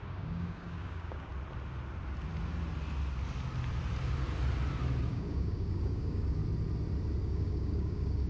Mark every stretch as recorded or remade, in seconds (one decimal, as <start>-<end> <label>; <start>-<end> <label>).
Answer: 0.0-1.3 remade; 1.3-5.1 recorded; 5.1-6.4 remade; 6.4-7.2 recorded; 7.2-8.3 remade